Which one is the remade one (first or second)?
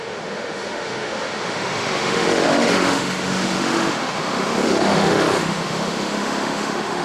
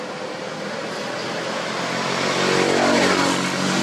first